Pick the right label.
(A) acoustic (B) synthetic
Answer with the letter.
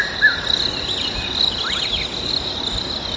A